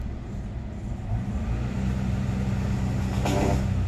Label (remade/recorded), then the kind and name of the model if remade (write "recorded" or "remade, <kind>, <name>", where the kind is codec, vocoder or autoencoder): recorded